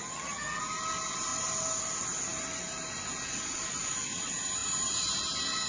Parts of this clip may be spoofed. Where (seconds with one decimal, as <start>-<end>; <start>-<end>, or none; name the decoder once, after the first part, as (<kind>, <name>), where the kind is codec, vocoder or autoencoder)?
0.0-0.6 (vocoder, HiFi-GAN)

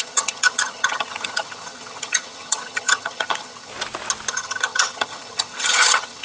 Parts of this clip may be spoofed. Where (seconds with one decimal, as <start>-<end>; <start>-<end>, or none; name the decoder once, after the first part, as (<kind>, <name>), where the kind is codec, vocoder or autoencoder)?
0.0-3.7 (vocoder, HiFi-GAN); 4.3-6.2